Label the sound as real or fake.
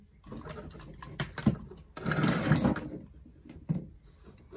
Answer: real